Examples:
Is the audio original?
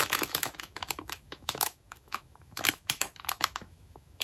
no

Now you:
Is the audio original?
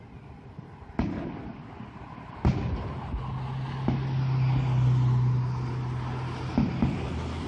yes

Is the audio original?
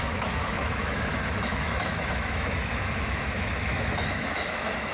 no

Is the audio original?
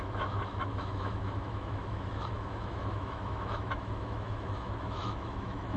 no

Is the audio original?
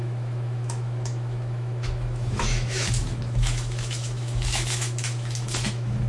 no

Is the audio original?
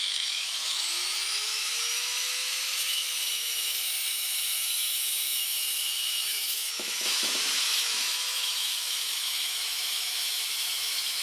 no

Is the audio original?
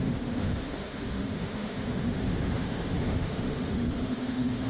no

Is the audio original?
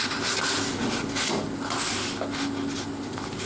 yes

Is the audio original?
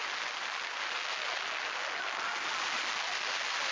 yes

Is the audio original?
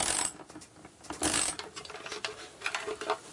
yes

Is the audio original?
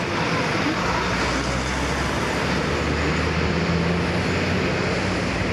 yes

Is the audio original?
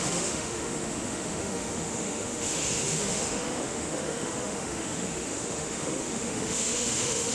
no